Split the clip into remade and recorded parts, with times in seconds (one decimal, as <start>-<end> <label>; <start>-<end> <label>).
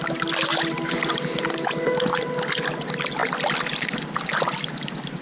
0.0-5.2 recorded